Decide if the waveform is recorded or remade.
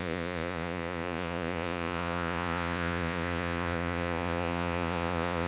remade